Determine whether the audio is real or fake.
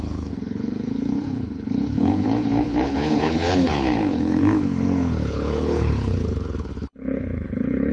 fake